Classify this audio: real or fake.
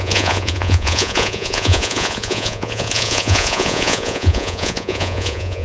fake